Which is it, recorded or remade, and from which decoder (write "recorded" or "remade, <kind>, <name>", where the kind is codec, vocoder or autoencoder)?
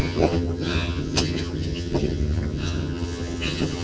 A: remade, vocoder, HiFi-GAN